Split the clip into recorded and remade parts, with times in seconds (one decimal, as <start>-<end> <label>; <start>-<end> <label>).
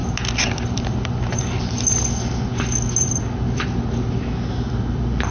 0.0-5.3 recorded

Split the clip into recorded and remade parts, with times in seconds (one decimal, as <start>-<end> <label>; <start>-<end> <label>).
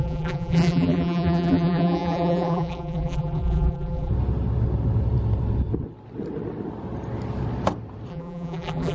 0.0-4.1 remade; 4.1-8.1 recorded; 8.1-8.9 remade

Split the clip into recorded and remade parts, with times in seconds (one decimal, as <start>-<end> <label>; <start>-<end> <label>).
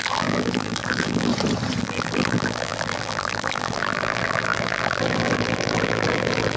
0.0-1.3 remade; 1.3-1.8 recorded; 1.8-6.6 remade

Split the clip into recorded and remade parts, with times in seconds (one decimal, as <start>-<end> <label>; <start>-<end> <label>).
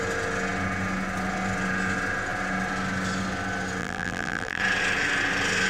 0.0-3.8 recorded; 3.8-4.6 remade; 4.6-5.7 recorded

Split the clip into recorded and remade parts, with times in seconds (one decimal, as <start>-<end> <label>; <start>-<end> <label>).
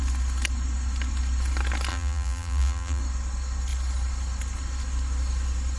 0.0-1.9 recorded; 1.9-3.0 remade; 3.0-5.8 recorded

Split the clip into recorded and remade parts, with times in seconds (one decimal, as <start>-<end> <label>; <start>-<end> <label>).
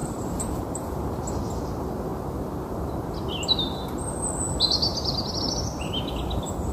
0.0-1.2 remade; 1.2-6.7 recorded